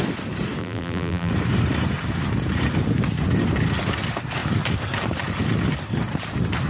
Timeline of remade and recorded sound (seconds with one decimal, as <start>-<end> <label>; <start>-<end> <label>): 0.0-0.6 recorded; 0.6-1.3 remade; 1.3-6.7 recorded